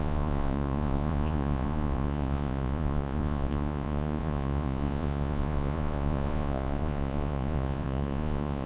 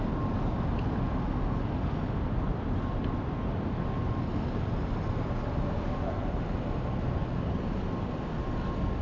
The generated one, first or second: first